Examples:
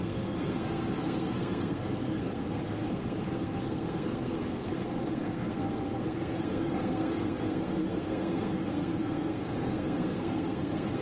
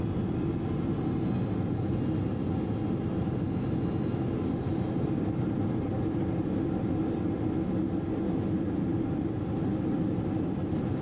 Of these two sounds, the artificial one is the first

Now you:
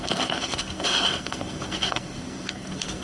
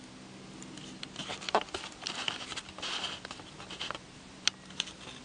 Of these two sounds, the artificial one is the first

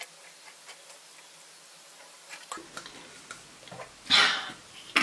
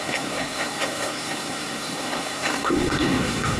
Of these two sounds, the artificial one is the second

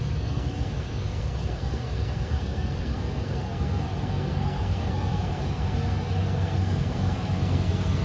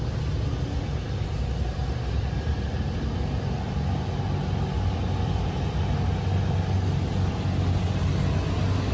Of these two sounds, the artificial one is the first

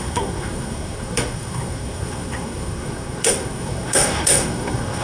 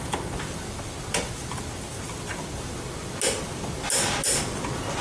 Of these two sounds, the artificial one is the first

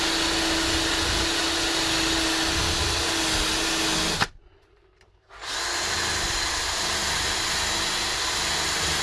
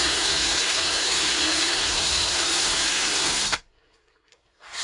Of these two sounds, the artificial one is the second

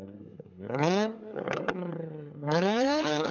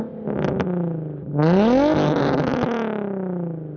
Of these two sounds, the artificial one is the first